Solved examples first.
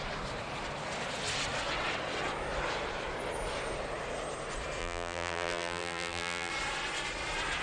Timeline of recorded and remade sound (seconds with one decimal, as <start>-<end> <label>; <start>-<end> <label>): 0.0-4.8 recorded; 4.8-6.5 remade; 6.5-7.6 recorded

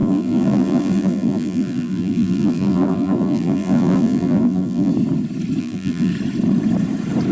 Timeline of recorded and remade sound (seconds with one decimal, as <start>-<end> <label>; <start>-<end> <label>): 0.0-4.9 remade; 4.9-5.6 recorded; 5.6-6.1 remade; 6.1-7.3 recorded

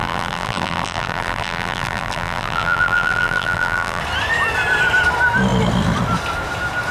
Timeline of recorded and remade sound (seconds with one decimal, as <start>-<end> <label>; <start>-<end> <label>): 0.0-4.0 remade; 4.0-6.9 recorded

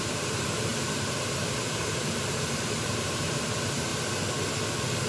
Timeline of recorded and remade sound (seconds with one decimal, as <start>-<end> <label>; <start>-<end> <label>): 0.0-3.9 remade; 3.9-5.1 recorded